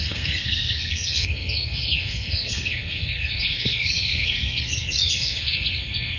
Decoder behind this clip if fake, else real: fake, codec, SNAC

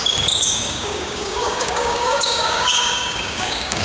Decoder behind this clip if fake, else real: fake, codec, DAC